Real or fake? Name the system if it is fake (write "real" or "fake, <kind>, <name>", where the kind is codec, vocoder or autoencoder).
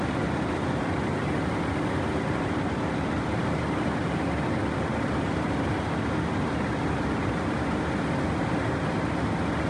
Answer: real